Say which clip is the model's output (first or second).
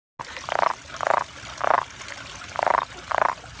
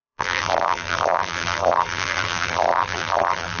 second